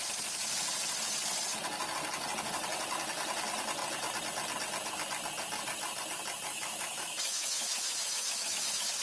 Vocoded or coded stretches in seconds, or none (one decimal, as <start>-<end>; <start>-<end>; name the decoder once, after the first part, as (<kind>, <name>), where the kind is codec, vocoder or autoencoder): 6.5-9.0 (autoencoder, DAC-VAE)